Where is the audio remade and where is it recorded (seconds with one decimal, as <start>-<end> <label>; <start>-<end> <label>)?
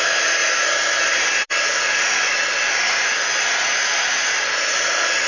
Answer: 0.0-5.3 recorded